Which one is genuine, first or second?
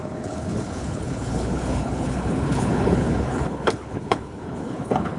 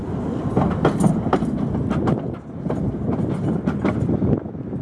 second